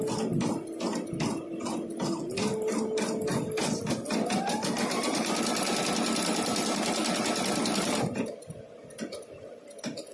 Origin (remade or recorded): recorded